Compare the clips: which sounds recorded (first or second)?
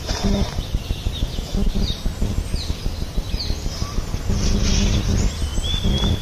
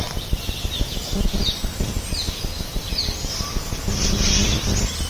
first